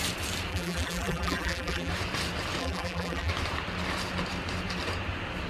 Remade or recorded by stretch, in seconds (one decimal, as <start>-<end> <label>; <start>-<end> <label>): 0.0-0.5 recorded; 0.5-1.9 remade; 1.9-2.6 recorded; 2.6-3.3 remade; 3.3-5.5 recorded

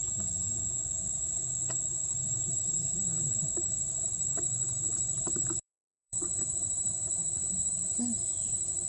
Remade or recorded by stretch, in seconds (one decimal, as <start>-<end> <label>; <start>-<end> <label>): 0.0-2.3 recorded; 2.3-7.3 remade; 7.3-8.9 recorded

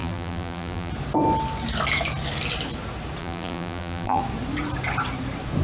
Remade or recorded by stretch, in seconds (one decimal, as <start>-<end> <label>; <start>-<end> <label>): 0.0-0.9 remade; 0.9-3.2 recorded; 3.2-4.2 remade; 4.2-5.6 recorded